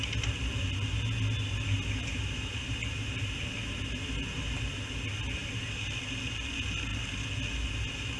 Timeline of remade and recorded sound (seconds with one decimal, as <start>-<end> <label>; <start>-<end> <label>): 0.0-8.2 recorded